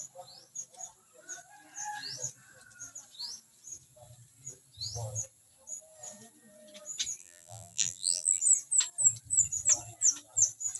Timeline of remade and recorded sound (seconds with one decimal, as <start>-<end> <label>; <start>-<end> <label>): 0.0-7.2 recorded; 7.2-8.4 remade; 8.4-10.8 recorded